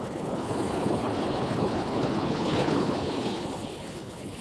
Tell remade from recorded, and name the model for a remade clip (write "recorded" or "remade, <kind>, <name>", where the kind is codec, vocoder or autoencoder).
remade, codec, HILCodec